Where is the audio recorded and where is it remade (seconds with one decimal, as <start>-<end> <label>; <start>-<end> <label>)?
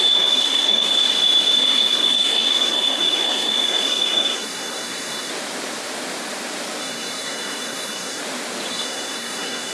0.0-1.1 remade; 1.1-1.6 recorded; 1.6-5.3 remade; 5.3-6.8 recorded; 6.8-8.2 remade; 8.2-8.7 recorded; 8.7-9.7 remade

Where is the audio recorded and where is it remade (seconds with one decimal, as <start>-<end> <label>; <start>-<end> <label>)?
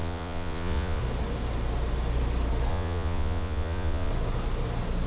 0.0-1.0 remade; 1.0-2.7 recorded; 2.7-4.1 remade; 4.1-5.1 recorded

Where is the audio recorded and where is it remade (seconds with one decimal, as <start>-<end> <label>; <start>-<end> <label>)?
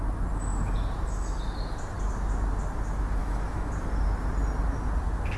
0.0-3.2 recorded; 3.2-3.7 remade; 3.7-5.4 recorded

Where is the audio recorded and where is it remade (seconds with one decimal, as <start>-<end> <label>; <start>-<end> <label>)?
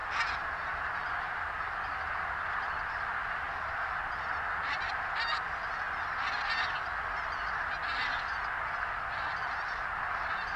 0.0-10.6 recorded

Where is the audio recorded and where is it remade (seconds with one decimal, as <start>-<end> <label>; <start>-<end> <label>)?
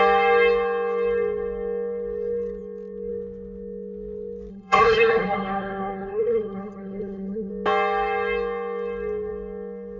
0.0-4.5 recorded; 4.5-7.5 remade; 7.5-10.0 recorded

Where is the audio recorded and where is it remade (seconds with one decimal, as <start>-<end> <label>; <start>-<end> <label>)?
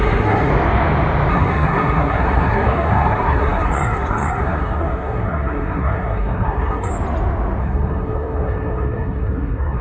0.0-0.5 remade; 0.5-1.3 recorded; 1.3-6.9 remade; 6.9-7.6 recorded; 7.6-9.8 remade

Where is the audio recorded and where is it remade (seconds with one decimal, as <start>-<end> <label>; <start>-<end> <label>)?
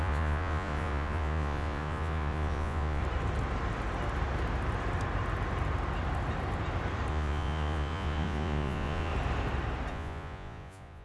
0.0-3.0 remade; 3.0-7.1 recorded; 7.1-9.1 remade; 9.1-9.9 recorded; 9.9-11.0 remade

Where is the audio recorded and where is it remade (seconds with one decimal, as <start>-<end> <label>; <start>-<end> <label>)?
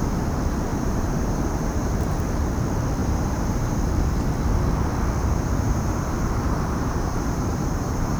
0.0-0.7 recorded; 0.7-2.1 remade; 2.1-3.0 recorded; 3.0-3.8 remade; 3.8-5.2 recorded; 5.2-8.2 remade